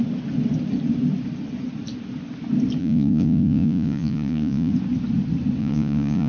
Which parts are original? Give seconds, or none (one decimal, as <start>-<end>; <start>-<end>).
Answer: 0.0-2.8; 4.7-5.6